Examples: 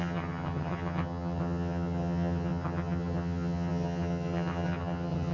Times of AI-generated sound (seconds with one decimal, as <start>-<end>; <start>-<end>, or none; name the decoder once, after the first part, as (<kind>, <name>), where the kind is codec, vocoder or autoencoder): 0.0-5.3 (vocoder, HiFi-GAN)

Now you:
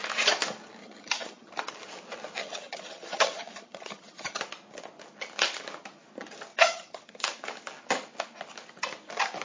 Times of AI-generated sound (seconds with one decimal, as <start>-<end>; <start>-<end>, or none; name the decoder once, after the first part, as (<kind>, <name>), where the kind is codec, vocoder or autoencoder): 0.8-1.5 (vocoder, HiFi-GAN); 2.4-4.4; 6.5-7.2

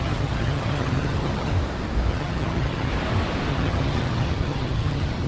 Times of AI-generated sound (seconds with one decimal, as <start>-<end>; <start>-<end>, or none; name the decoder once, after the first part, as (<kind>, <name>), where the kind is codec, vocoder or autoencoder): 0.0-1.5 (vocoder, HiFi-GAN); 2.1-2.9; 3.5-5.3

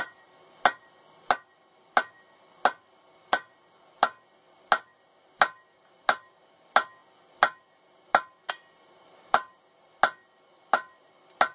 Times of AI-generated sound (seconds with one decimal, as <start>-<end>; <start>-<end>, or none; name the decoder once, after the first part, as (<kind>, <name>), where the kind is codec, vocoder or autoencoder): none